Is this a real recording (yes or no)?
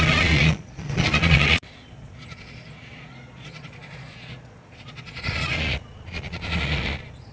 no